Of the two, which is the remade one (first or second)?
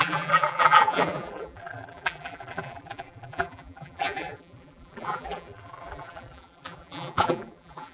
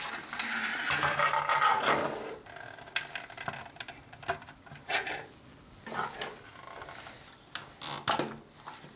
first